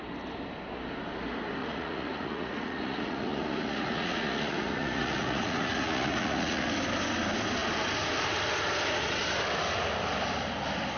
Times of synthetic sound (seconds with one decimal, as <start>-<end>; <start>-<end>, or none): 1.6-6.7